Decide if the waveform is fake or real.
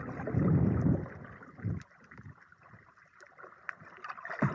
real